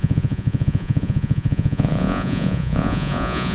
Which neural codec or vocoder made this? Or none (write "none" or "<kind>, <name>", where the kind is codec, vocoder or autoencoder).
vocoder, Vocos